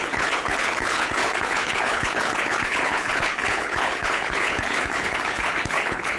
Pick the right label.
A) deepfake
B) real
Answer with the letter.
A